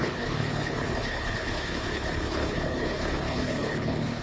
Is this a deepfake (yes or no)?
yes